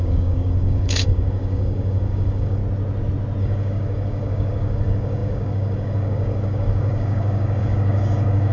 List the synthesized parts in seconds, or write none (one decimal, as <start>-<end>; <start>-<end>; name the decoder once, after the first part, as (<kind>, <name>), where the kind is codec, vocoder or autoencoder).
0.0-2.6 (codec, DAC); 3.4-8.5